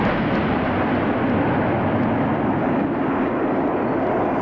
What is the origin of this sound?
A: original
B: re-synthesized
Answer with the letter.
A